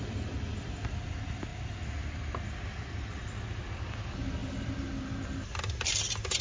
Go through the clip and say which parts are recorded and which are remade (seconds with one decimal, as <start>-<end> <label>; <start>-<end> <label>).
0.0-6.4 recorded